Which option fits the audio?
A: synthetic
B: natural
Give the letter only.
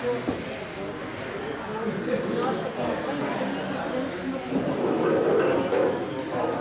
B